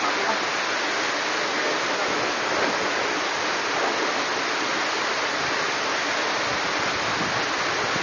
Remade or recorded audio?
recorded